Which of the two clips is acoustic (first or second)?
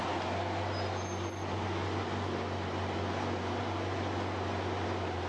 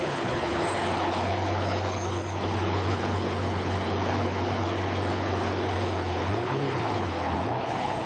first